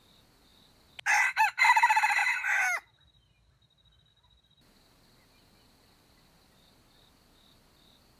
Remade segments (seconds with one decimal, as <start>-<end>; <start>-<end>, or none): none